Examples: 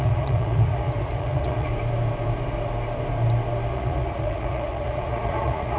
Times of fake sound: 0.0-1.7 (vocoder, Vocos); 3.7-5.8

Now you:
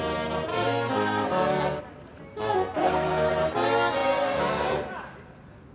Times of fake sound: 0.5-1.8 (codec, SNAC); 2.8-3.3

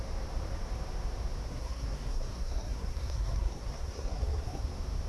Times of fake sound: 1.5-4.6 (codec, SNAC)